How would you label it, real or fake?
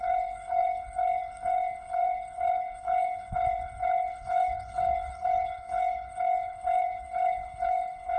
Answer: fake